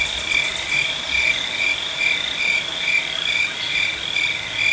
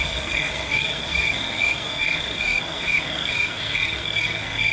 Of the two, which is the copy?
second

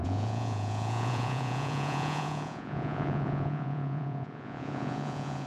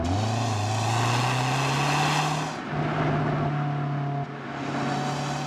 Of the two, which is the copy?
first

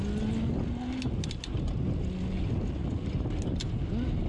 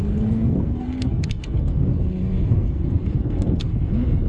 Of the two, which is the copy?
second